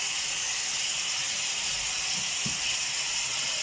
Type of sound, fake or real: real